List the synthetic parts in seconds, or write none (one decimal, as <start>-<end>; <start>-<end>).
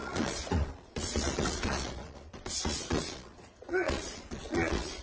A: 0.0-5.0